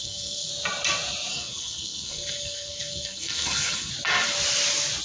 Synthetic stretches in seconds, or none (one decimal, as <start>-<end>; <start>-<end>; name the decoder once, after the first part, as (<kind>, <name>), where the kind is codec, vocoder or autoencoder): 0.0-0.5 (codec, SNAC); 1.3-3.9